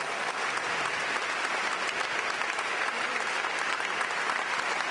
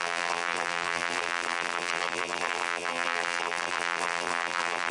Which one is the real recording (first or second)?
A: first